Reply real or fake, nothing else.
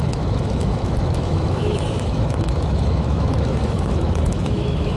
fake